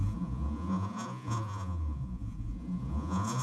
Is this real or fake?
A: fake